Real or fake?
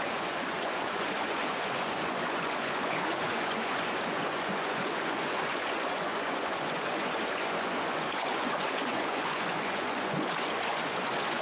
fake